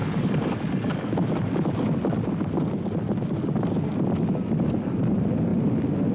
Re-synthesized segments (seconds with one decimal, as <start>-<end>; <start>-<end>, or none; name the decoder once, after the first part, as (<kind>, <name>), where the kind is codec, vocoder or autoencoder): 0.0-1.1 (codec, DAC)